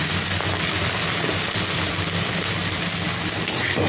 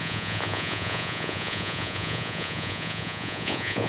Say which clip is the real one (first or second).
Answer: first